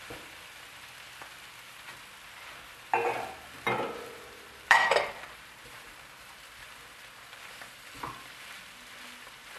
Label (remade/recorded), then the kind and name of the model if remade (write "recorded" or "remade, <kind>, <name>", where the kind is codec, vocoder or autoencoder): remade, vocoder, BigVGAN v2